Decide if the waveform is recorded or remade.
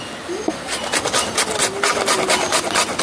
recorded